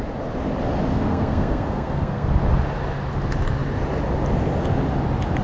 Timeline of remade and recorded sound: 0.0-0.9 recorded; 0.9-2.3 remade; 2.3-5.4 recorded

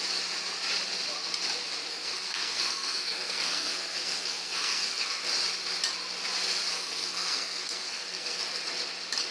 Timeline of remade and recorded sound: 0.0-1.9 recorded; 1.9-5.2 remade; 5.2-6.7 recorded; 6.7-8.4 remade; 8.4-9.3 recorded

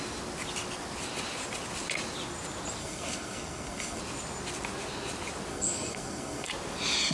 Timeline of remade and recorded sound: 0.0-2.8 recorded; 2.8-4.0 remade; 4.0-5.5 recorded; 5.5-6.5 remade; 6.5-7.1 recorded

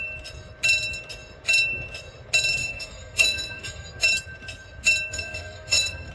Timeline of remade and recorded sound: 0.0-2.6 recorded; 2.6-4.0 remade; 4.0-5.1 recorded; 5.1-6.1 remade

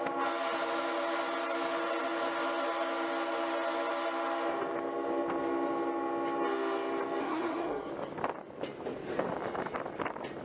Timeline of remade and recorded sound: 0.0-7.2 recorded; 7.2-7.9 remade; 7.9-10.4 recorded

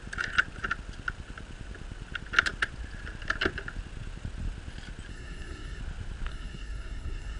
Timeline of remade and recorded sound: 0.0-5.1 recorded; 5.1-5.8 remade; 5.8-6.3 recorded; 6.3-7.4 remade

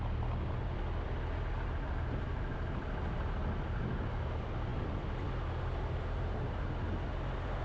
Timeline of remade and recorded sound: 0.0-7.6 recorded

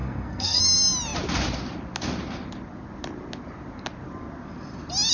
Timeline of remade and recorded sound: 0.0-0.6 remade; 0.6-5.1 recorded